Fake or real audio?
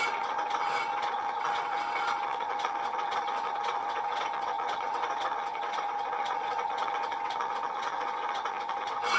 fake